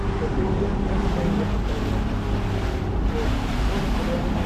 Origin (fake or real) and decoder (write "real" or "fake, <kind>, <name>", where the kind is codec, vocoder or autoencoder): real